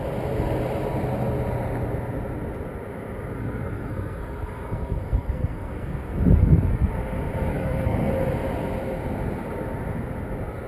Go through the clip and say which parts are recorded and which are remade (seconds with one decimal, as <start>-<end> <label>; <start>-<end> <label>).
0.0-3.4 recorded; 3.4-6.9 remade; 6.9-7.5 recorded; 7.5-8.1 remade; 8.1-10.7 recorded